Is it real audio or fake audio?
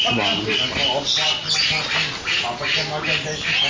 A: real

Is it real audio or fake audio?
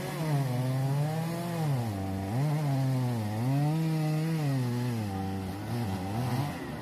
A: real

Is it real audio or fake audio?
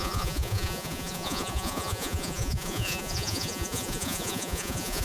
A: fake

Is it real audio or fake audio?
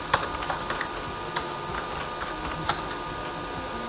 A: real